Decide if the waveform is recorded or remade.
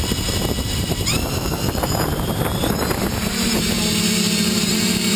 remade